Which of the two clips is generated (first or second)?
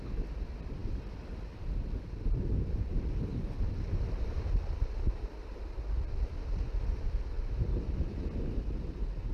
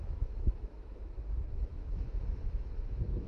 second